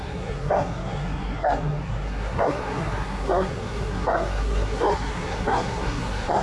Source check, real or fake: fake